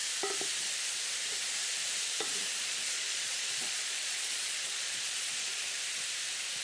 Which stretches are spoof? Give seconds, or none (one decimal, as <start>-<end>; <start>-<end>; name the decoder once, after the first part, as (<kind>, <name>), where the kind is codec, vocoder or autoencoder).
2.6-5.6 (vocoder, Vocos)